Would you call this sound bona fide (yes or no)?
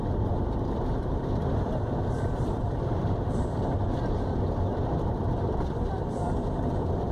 no